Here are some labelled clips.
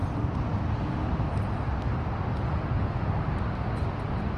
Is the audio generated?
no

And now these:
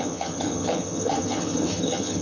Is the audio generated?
yes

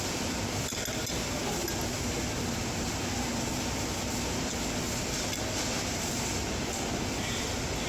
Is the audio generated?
no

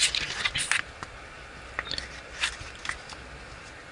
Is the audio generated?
no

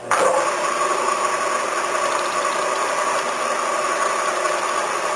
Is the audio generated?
no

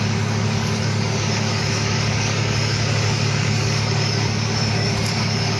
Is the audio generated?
yes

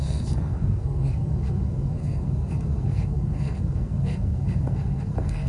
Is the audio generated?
yes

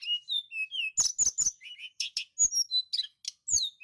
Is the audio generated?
no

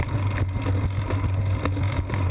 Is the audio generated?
no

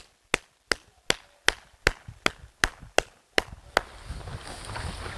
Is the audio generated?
no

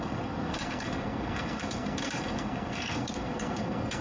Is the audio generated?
yes